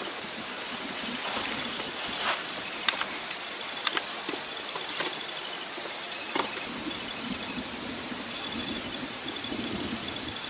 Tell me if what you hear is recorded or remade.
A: remade